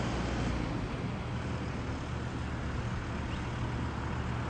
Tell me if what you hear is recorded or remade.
recorded